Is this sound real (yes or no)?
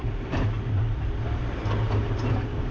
no